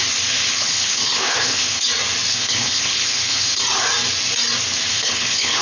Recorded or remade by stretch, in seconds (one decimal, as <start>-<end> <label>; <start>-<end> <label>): 0.0-0.5 recorded; 0.5-1.9 remade; 1.9-2.3 recorded; 2.3-3.6 remade; 3.6-4.9 recorded; 4.9-5.6 remade